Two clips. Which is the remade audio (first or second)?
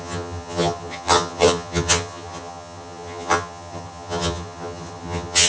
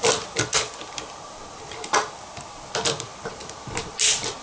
first